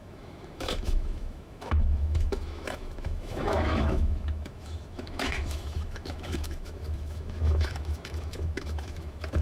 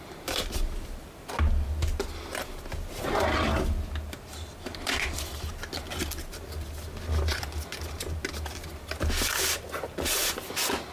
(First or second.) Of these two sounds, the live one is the second